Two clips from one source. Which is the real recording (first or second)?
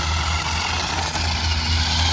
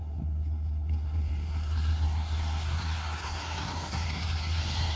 first